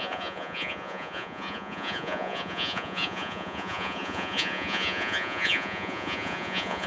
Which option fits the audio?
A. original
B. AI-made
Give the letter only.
B